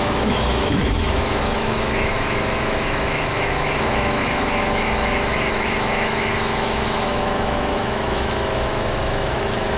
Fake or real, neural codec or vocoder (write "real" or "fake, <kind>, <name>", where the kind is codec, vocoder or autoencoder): fake, autoencoder, DAC-VAE